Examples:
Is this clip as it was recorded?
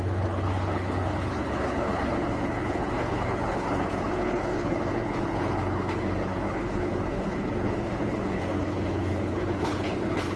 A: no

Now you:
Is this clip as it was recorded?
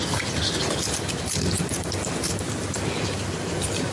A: yes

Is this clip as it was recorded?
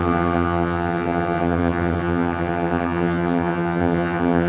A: no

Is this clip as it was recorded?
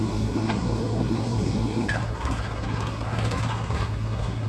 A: no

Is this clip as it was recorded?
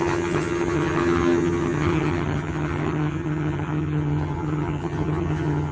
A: no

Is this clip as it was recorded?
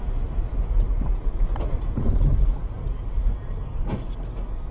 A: no